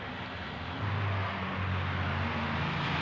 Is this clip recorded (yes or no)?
yes